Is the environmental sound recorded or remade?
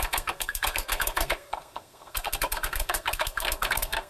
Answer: remade